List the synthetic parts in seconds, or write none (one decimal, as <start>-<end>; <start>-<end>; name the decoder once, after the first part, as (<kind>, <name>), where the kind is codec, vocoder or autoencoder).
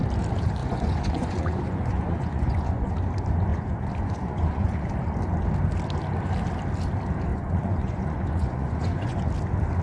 0.6-2.9 (vocoder, Vocos); 3.5-4.9; 7.3-9.3